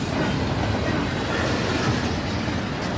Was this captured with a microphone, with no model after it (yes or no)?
yes